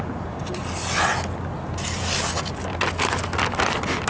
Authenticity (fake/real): real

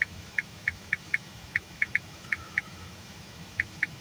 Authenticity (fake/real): fake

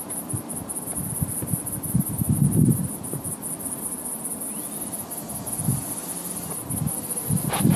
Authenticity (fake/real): real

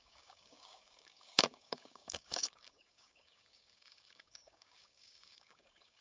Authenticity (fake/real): fake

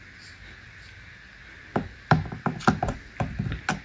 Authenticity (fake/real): real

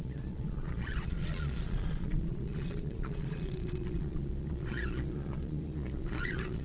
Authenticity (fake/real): fake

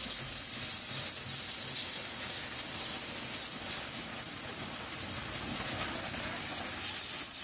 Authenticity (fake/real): real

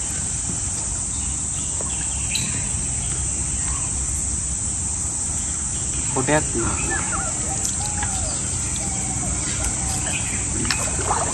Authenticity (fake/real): real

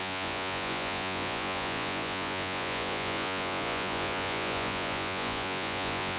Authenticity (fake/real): fake